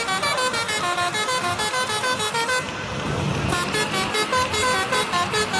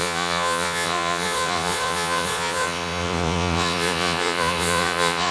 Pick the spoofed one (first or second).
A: second